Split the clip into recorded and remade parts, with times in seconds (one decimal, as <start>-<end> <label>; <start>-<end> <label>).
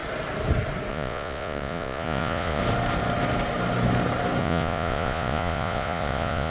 0.0-0.9 recorded; 0.9-2.6 remade; 2.6-4.4 recorded; 4.4-6.5 remade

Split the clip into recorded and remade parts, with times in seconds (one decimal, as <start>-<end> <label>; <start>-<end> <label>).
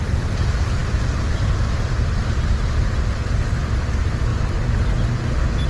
0.0-5.7 recorded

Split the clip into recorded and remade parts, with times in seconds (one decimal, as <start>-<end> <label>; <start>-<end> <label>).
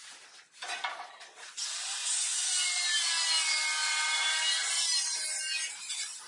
0.0-2.0 recorded; 2.0-2.5 remade; 2.5-6.3 recorded